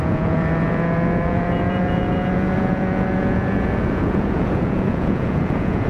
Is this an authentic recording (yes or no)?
no